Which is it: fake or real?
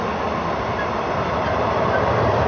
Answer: real